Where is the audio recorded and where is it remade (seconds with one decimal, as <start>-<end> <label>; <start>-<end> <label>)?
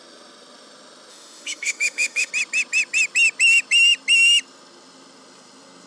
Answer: 0.0-1.1 recorded; 1.1-2.3 remade; 2.3-5.9 recorded